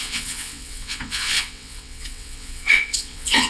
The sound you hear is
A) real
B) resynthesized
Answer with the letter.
B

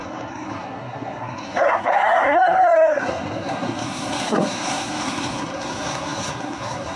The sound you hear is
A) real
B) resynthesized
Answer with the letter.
B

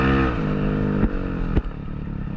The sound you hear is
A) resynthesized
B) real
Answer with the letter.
B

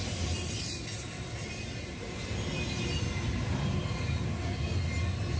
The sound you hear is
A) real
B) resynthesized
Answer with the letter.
A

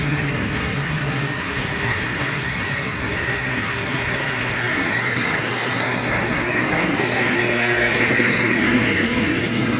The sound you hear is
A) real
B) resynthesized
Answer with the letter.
B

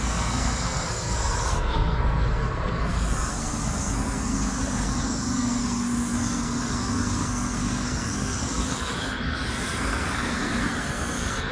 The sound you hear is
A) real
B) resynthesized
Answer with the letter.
B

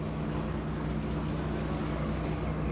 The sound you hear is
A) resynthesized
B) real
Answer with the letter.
B